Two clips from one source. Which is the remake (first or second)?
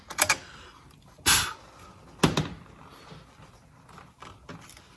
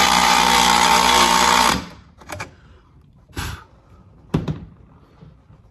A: second